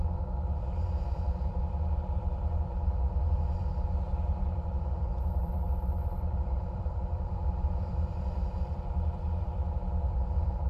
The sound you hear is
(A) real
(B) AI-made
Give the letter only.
B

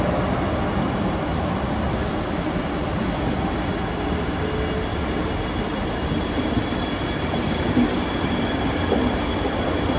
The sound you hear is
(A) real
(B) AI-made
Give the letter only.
A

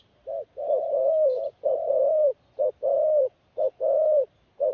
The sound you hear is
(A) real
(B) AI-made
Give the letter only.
B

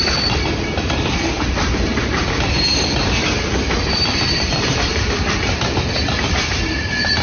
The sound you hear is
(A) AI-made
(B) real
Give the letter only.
A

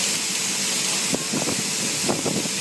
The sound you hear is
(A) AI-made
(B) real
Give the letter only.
B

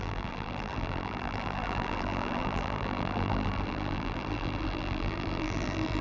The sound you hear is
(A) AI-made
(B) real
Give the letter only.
A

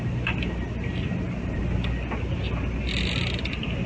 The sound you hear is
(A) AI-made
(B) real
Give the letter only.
B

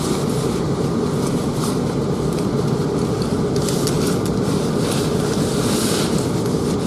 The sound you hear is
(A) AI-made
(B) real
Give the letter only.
B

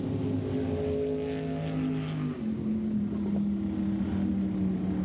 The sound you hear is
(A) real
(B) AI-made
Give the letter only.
A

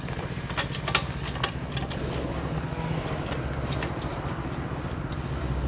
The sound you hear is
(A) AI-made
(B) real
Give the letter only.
B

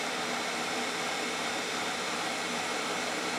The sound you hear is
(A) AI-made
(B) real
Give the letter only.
A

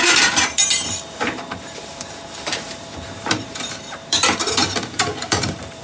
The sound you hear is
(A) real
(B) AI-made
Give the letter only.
B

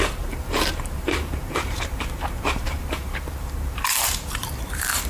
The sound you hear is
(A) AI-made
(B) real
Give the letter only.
A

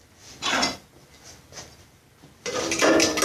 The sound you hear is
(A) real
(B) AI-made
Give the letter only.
A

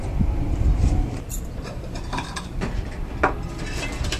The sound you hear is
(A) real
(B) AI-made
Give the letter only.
B